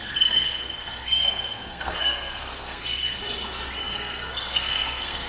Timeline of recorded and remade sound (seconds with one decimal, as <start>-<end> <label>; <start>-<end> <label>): 0.0-3.2 remade; 3.2-3.9 recorded; 3.9-5.3 remade